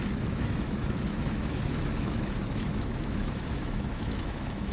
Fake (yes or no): yes